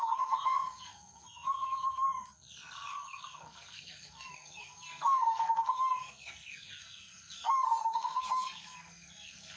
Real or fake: fake